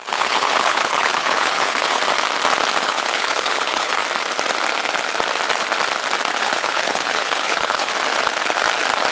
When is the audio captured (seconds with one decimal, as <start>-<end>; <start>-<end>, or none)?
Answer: 2.0-2.8; 4.0-6.4; 7.9-9.1

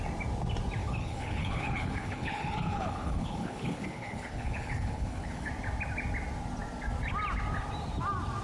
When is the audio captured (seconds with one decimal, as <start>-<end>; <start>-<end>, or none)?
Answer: 0.0-0.8; 5.5-8.4

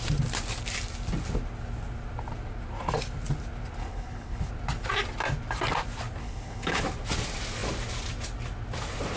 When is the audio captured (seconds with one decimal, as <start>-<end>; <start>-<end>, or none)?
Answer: 0.0-3.8; 4.5-6.2; 6.8-9.2